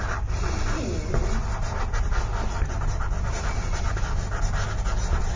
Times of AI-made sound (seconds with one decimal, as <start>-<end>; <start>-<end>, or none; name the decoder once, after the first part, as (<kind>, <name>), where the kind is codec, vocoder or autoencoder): none